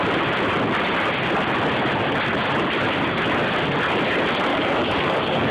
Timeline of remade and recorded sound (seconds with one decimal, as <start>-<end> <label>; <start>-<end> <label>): 0.0-4.5 recorded; 4.5-5.5 remade